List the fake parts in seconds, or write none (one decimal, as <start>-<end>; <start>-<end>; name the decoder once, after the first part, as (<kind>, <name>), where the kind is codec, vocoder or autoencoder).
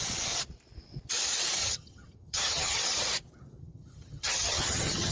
1.6-2.8 (vocoder, HiFi-GAN); 3.6-5.1